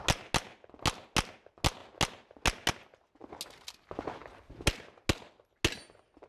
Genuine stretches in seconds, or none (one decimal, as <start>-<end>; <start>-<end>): 0.0-6.3